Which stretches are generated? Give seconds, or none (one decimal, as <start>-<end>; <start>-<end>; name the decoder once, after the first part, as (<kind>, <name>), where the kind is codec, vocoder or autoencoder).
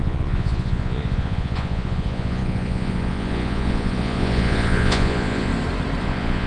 0.0-5.5 (vocoder, Vocos); 6.0-6.5